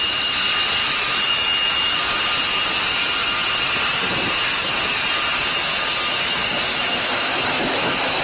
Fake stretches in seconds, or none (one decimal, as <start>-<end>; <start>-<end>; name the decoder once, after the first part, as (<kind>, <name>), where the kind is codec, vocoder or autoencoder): 0.8-2.0 (autoencoder, DAC-VAE); 6.7-8.2